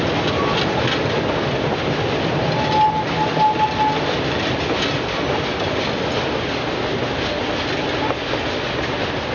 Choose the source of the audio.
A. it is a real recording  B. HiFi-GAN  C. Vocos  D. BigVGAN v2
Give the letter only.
A